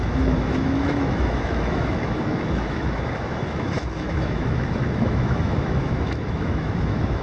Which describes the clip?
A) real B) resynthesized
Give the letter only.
B